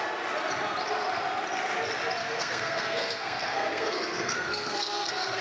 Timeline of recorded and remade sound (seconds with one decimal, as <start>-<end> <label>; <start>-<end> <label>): 0.0-2.2 recorded; 2.2-5.4 remade